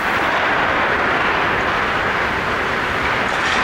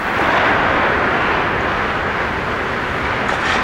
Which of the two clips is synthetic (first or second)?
first